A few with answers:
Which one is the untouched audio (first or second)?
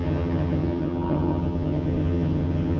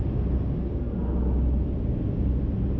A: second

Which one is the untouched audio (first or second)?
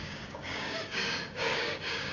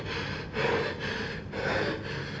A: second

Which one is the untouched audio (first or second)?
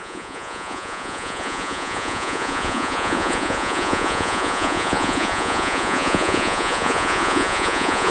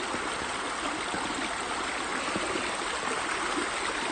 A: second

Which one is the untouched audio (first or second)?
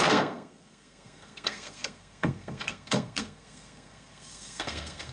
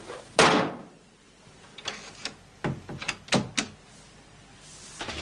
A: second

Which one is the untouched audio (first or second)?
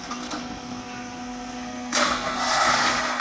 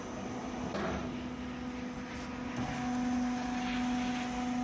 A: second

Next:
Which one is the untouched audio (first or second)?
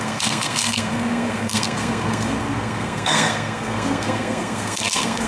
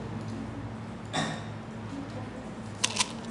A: second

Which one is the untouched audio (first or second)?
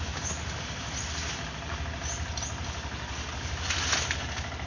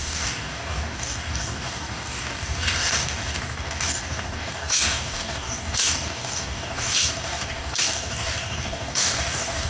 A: first